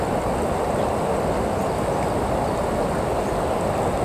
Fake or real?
real